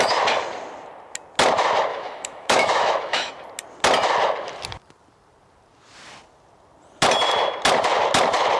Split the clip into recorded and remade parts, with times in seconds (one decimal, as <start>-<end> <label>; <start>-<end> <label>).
0.0-1.9 recorded; 1.9-3.3 remade; 3.3-8.6 recorded